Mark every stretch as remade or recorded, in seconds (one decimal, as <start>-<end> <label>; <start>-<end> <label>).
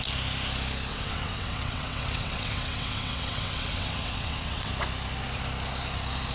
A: 0.0-0.9 recorded; 0.9-4.7 remade; 4.7-6.3 recorded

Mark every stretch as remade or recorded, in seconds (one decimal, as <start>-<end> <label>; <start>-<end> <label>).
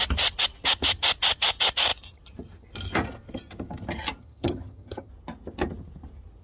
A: 0.0-4.2 recorded; 4.2-5.1 remade; 5.1-6.4 recorded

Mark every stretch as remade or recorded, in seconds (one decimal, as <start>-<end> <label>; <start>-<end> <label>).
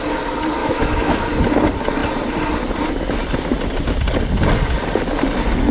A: 0.0-0.6 recorded; 0.6-1.2 remade; 1.2-5.7 recorded